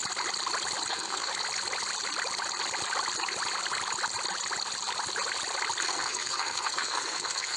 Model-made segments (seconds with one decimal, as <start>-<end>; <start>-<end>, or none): 0.9-1.3; 5.8-7.6